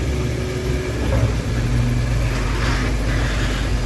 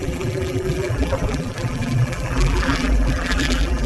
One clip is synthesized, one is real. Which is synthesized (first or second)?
second